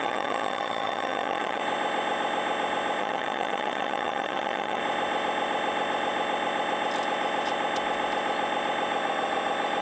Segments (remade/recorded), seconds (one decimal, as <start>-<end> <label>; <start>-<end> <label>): 0.0-1.6 remade; 1.6-3.0 recorded; 3.0-4.8 remade; 4.8-9.8 recorded